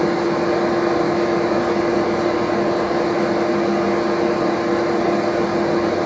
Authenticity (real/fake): real